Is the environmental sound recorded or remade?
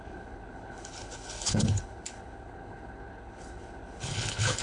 remade